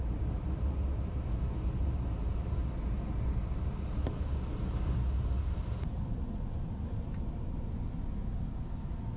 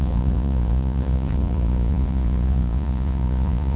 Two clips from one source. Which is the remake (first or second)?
second